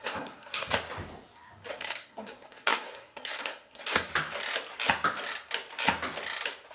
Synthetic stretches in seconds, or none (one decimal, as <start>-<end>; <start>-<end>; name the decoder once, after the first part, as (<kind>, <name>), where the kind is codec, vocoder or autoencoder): 0.0-0.7 (codec, SNAC); 1.7-4.1

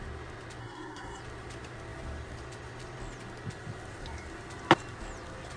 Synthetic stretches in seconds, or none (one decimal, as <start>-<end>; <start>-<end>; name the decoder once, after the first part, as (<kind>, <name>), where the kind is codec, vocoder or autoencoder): 0.6-1.2 (codec, SNAC)

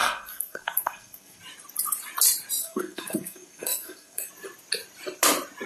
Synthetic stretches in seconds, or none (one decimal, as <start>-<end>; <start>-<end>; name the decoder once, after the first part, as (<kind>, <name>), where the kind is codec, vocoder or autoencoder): 0.0-1.4 (codec, SNAC); 2.6-4.3

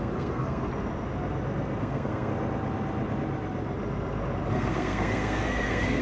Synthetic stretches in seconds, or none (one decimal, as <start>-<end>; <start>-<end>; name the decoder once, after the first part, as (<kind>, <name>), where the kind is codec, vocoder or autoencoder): 0.0-0.7 (codec, SNAC); 1.8-2.3; 4.5-6.0

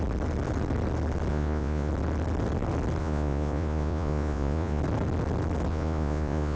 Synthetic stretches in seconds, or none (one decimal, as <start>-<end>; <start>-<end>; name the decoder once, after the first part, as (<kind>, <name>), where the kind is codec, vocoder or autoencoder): 1.3-1.9 (vocoder, Vocos); 3.0-4.8; 5.7-6.6

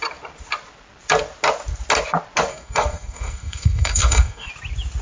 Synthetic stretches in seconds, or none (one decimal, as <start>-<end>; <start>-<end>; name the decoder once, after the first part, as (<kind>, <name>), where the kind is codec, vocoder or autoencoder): 2.5-4.5 (codec, SNAC)

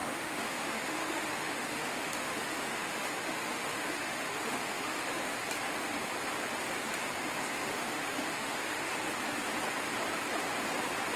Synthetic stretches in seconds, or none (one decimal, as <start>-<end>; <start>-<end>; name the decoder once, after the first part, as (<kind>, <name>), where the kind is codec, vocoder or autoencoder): 0.0-5.4 (autoencoder, DAC-VAE); 7.6-8.9

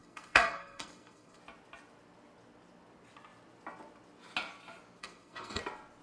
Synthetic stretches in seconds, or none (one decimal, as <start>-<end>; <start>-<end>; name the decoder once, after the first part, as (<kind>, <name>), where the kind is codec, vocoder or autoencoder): 0.0-1.4 (codec, SNAC); 5.0-5.6